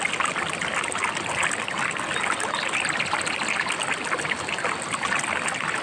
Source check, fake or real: real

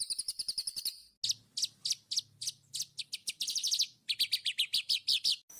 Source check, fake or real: real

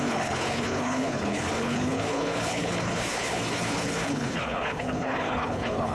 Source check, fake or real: fake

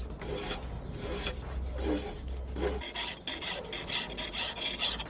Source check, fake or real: real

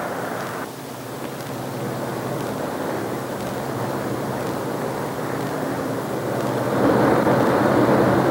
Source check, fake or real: real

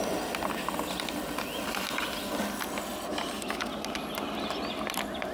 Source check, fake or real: real